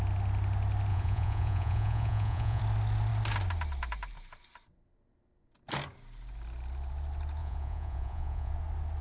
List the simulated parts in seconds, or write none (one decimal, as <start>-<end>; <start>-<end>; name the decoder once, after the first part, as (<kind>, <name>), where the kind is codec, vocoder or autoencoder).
0.9-2.6 (vocoder, Vocos); 7.4-8.5